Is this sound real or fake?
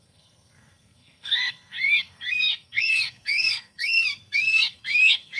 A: fake